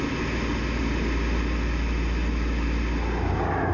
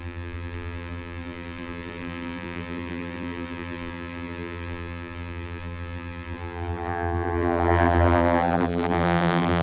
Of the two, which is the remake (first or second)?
second